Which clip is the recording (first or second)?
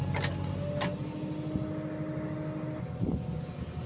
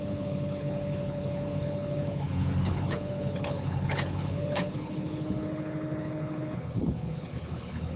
first